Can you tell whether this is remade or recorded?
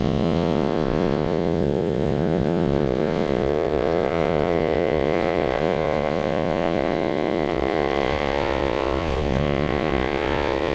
remade